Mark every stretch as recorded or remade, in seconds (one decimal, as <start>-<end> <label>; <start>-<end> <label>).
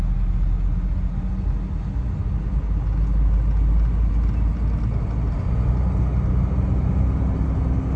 0.0-8.0 recorded